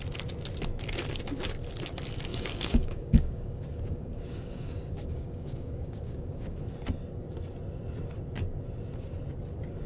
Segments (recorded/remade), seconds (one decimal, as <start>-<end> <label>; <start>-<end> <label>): 0.0-2.3 recorded; 2.3-6.6 remade; 6.6-9.9 recorded